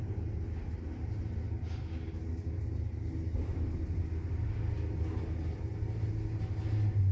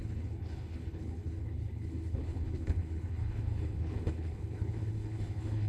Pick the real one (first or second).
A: first